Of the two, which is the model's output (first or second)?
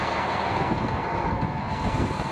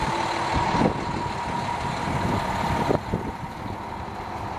first